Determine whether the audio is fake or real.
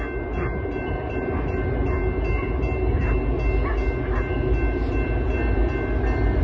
real